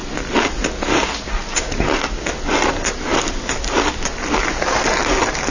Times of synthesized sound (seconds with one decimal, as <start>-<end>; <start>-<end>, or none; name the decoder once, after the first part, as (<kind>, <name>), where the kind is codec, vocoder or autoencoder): none